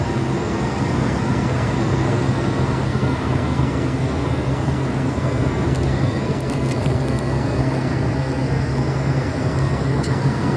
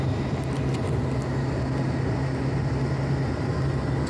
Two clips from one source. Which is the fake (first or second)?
first